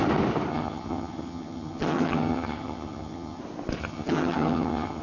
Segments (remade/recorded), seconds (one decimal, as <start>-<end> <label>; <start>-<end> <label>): 0.0-0.5 recorded; 0.5-3.4 remade; 3.4-3.8 recorded; 3.8-5.0 remade